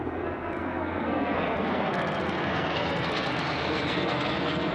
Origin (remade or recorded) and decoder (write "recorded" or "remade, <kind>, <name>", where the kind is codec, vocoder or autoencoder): remade, codec, SNAC